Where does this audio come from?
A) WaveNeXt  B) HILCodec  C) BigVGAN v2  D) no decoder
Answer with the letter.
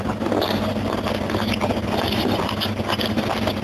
D